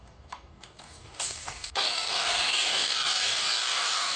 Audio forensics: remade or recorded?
remade